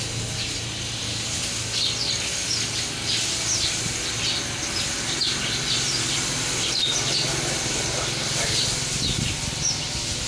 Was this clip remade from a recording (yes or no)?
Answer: no